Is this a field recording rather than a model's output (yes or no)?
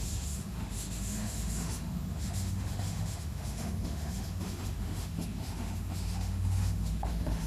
no